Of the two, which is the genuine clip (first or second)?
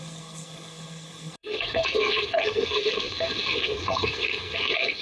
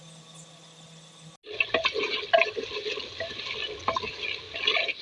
second